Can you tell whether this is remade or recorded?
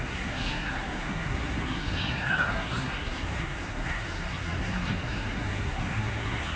remade